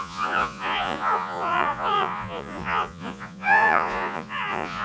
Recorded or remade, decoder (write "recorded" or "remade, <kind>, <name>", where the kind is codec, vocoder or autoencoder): remade, vocoder, Vocos